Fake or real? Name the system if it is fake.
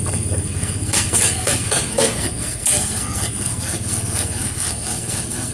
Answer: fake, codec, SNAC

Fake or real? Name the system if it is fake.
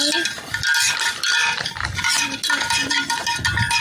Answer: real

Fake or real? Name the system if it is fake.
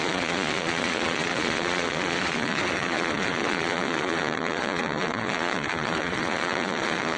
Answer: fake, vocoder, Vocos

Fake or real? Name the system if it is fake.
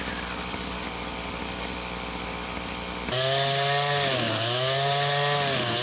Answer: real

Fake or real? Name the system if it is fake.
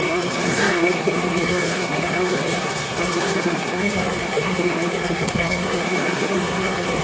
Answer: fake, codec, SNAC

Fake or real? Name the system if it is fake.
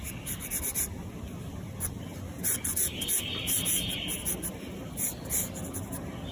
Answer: real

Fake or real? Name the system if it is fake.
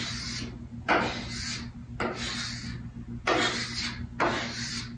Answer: real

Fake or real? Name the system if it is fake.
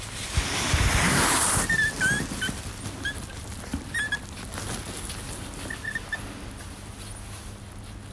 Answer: real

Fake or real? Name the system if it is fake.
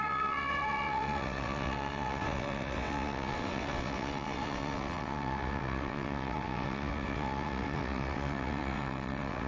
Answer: fake, vocoder, WaveNeXt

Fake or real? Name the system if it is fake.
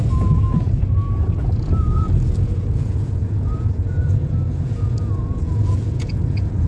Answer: fake, vocoder, Vocos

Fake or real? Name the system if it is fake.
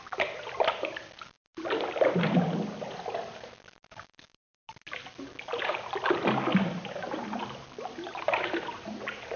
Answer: real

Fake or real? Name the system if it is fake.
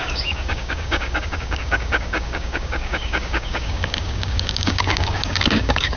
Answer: fake, codec, DAC